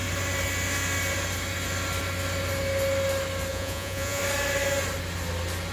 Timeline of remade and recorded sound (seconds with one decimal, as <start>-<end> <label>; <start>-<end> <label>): 0.0-3.5 recorded; 3.5-4.2 remade; 4.2-5.7 recorded